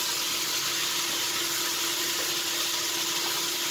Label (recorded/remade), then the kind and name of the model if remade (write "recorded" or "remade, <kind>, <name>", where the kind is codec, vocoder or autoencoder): recorded